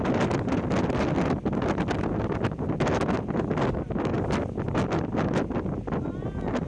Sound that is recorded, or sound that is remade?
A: recorded